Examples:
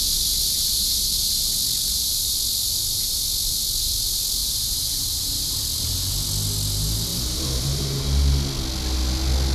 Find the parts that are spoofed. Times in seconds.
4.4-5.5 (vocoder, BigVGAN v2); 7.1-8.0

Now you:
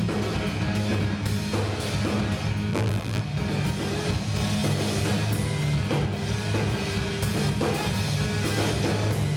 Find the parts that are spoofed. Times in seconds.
2.7-3.2 (vocoder, BigVGAN v2)

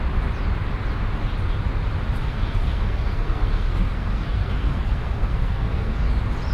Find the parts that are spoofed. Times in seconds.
2.2-6.1 (codec, SNAC)